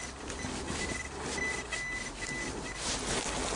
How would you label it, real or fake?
real